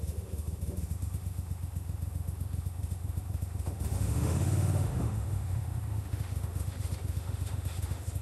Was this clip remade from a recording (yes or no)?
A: yes